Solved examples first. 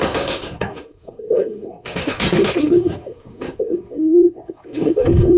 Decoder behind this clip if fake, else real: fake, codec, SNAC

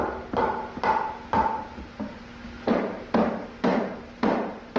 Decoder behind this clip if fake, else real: real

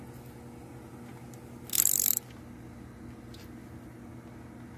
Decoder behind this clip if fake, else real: real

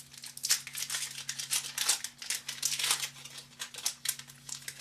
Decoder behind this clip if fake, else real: real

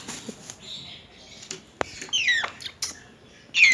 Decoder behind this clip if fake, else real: real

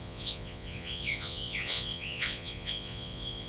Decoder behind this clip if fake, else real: fake, vocoder, Vocos